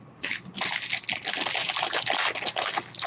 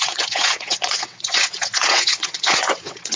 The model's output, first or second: second